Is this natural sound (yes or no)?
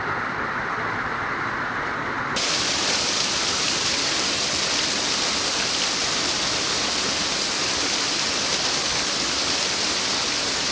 yes